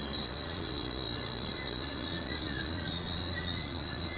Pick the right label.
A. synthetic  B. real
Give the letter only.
A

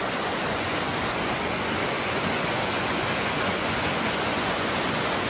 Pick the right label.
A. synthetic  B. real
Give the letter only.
A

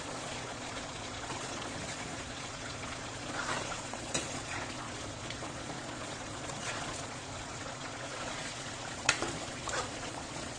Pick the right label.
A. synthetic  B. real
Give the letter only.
A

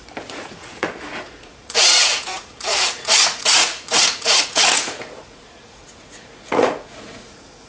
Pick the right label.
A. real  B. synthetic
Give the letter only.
B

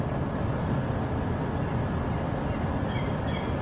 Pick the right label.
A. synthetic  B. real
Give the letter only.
B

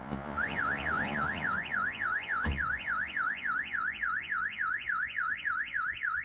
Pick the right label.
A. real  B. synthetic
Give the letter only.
B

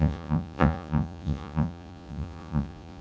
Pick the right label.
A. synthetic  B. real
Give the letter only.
A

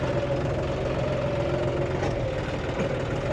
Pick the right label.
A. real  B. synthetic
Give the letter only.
A